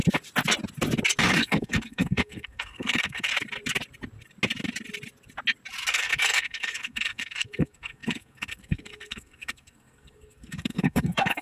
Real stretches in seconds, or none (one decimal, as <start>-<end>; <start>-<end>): 0.0-1.2; 3.3-5.9